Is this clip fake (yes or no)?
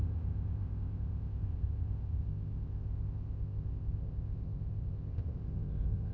yes